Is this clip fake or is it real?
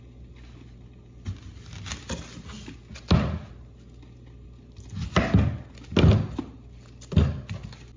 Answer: real